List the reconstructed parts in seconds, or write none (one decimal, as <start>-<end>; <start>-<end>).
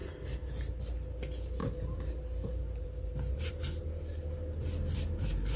1.6-3.5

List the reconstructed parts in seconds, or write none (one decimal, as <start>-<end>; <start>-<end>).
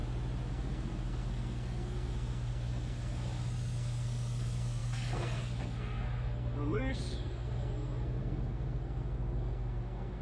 0.5-10.2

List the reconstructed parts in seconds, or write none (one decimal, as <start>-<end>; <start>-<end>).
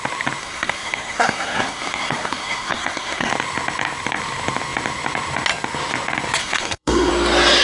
0.4-3.3; 6.4-7.1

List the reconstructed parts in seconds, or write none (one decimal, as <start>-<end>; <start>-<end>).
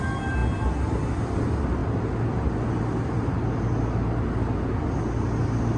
none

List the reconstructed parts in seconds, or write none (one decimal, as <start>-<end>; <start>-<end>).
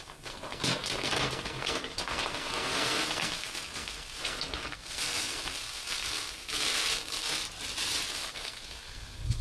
0.0-7.4; 8.1-9.4